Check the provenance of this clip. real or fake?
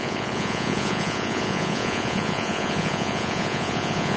fake